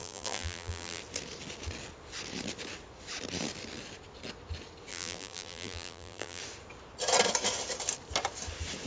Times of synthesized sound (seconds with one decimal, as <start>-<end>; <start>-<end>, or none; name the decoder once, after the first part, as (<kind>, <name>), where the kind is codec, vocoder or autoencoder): 0.0-1.0 (vocoder, BigVGAN v2); 4.9-6.4